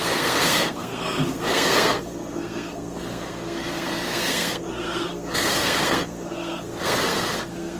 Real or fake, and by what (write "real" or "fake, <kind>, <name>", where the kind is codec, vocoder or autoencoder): fake, codec, SNAC